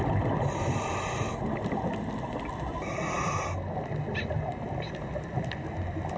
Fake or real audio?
real